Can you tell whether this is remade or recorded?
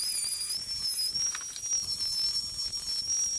recorded